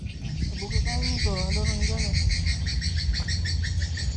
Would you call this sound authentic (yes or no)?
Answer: yes